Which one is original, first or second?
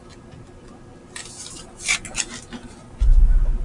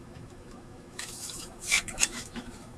first